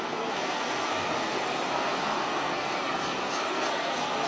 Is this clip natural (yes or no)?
no